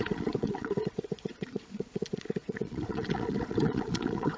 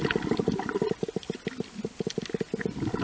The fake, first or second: first